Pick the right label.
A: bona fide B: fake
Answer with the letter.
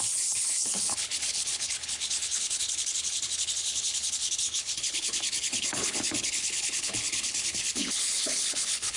B